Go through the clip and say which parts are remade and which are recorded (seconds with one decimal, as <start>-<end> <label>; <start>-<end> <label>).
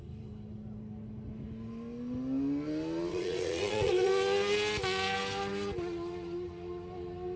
0.0-3.1 recorded; 3.1-4.1 remade; 4.1-7.4 recorded